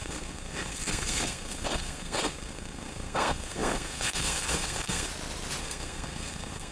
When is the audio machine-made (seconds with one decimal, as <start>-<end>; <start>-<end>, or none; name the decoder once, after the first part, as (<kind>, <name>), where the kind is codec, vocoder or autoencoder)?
0.0-5.1 (codec, SNAC); 5.6-6.7